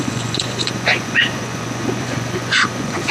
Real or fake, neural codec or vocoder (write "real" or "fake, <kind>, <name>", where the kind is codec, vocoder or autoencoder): fake, vocoder, Vocos